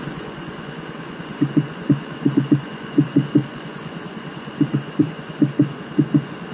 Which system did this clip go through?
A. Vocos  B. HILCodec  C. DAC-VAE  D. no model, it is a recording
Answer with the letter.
A